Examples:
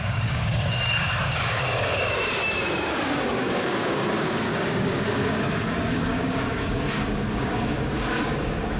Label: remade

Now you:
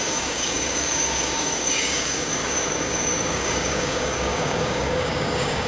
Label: remade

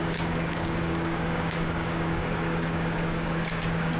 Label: remade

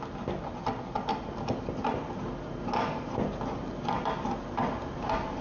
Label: recorded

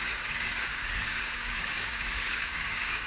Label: remade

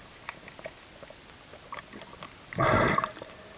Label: recorded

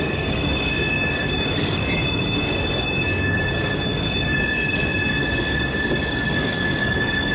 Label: remade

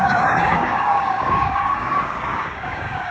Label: remade